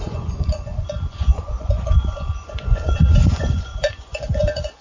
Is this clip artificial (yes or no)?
yes